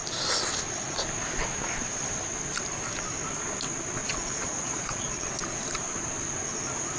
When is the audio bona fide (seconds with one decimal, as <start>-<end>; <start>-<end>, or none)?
0.0-4.0; 5.3-7.0